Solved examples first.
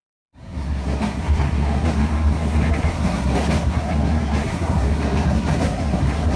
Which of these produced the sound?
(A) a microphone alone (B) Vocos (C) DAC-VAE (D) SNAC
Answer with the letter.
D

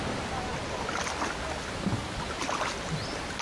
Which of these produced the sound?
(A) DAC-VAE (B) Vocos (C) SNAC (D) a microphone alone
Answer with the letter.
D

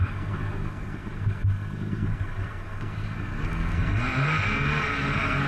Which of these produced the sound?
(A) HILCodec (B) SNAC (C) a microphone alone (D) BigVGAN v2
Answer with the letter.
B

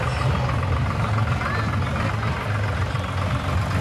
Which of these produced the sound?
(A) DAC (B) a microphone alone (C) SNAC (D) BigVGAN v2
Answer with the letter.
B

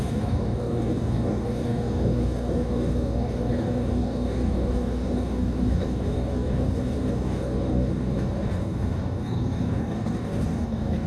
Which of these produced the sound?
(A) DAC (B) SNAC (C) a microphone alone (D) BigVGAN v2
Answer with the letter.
A